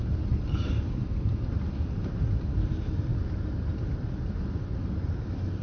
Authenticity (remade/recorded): recorded